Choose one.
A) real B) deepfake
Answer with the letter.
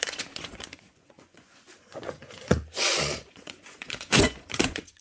B